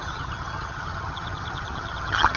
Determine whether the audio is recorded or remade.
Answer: remade